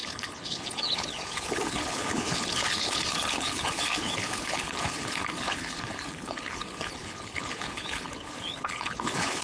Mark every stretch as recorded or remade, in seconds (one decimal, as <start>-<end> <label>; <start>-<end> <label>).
0.0-9.4 remade